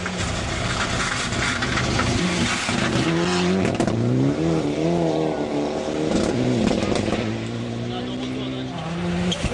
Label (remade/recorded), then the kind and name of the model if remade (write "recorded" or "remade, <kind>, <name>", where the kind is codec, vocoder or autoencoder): recorded